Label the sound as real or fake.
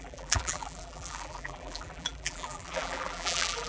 fake